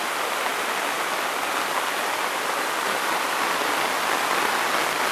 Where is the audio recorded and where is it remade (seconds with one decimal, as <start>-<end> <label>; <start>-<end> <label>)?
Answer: 0.0-5.1 recorded